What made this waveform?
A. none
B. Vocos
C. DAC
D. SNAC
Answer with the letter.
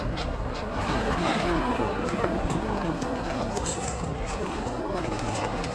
D